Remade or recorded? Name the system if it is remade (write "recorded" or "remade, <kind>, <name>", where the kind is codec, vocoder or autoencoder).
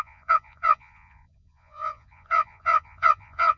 remade, vocoder, Vocos